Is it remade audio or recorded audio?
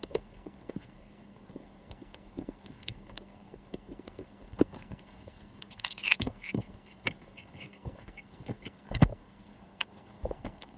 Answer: remade